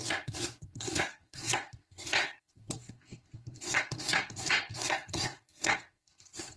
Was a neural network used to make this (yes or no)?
yes